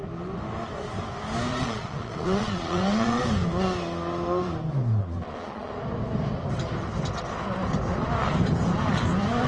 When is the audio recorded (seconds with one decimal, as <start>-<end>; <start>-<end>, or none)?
0.0-1.5; 3.2-5.0; 5.7-9.5